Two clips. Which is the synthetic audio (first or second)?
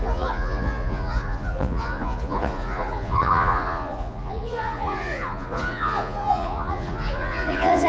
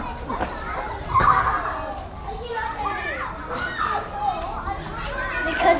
first